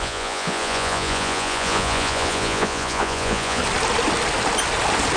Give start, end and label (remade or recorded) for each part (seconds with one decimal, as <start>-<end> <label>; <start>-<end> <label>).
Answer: 0.0-3.6 remade; 3.6-5.2 recorded